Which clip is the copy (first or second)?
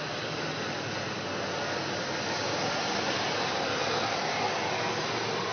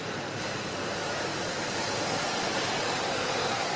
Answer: second